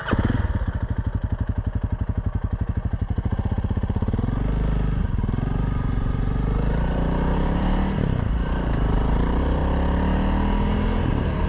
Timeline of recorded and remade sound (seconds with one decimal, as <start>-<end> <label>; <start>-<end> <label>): 0.0-5.0 recorded; 5.0-9.6 remade; 9.6-11.1 recorded; 11.1-11.5 remade